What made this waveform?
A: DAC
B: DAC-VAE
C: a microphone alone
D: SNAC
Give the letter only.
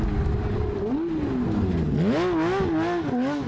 C